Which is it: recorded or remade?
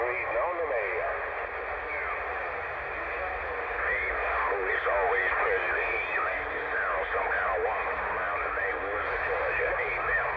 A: recorded